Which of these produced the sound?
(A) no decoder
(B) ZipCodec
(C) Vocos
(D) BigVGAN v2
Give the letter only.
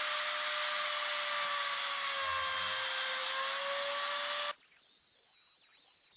A